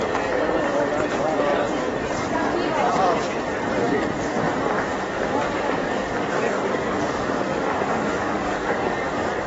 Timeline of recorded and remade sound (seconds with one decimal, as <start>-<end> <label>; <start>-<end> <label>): 0.0-4.9 recorded; 4.9-9.5 remade

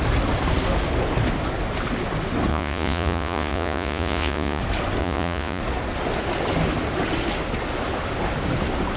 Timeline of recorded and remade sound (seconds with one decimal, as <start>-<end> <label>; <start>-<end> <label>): 0.0-2.5 recorded; 2.5-4.6 remade; 4.6-5.0 recorded; 5.0-5.6 remade; 5.6-9.0 recorded